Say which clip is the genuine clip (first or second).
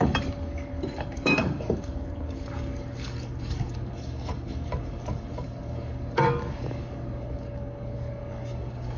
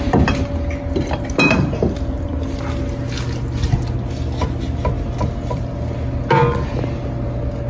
second